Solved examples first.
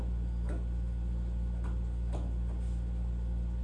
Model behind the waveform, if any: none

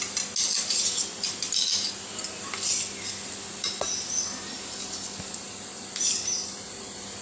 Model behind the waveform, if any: none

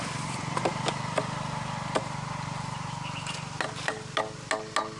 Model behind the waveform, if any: none